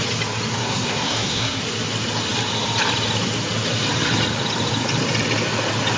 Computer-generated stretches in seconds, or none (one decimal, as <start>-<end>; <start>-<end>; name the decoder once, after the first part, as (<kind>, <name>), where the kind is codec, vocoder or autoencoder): 0.6-1.6 (codec, SNAC)